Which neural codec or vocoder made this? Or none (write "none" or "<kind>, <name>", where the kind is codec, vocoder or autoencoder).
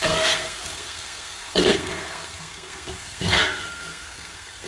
codec, SNAC